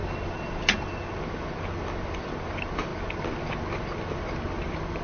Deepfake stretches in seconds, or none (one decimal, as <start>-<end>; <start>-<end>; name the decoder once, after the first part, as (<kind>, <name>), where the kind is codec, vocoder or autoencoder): none